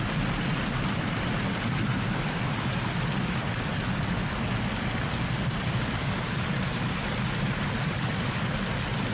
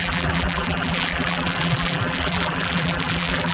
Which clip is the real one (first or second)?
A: first